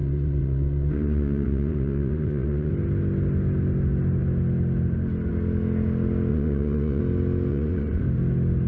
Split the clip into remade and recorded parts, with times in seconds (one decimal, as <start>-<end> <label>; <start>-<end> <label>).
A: 0.0-2.7 remade; 2.7-6.3 recorded; 6.3-7.0 remade; 7.0-7.5 recorded; 7.5-8.0 remade; 8.0-8.7 recorded